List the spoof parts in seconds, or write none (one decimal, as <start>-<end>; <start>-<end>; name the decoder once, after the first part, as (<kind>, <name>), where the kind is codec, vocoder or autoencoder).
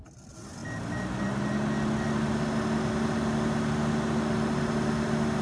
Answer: none